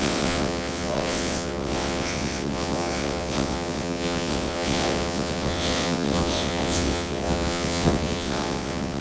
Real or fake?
fake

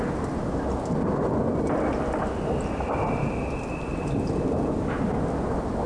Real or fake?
real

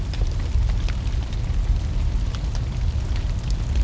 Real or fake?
real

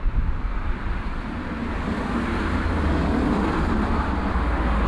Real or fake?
real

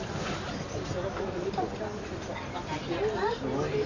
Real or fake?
real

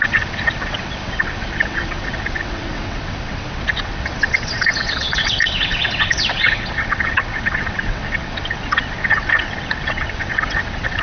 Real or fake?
fake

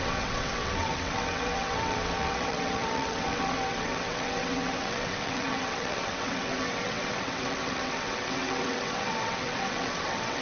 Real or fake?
fake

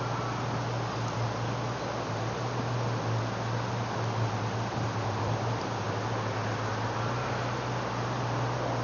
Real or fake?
real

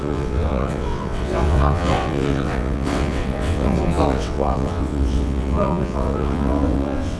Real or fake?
fake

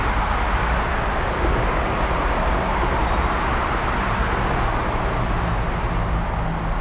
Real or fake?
real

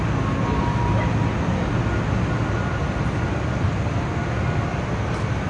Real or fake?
real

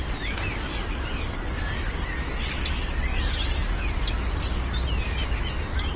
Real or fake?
real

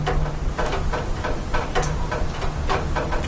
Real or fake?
real